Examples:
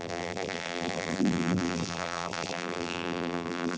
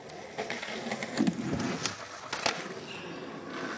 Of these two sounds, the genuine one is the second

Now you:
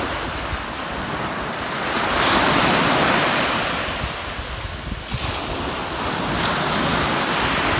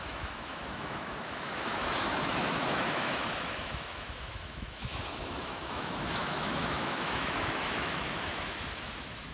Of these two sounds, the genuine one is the first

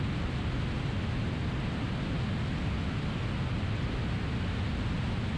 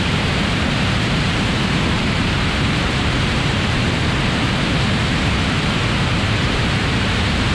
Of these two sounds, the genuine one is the first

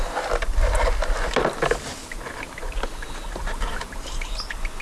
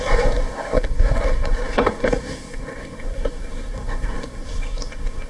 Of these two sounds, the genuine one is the first